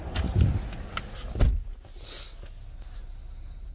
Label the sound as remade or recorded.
recorded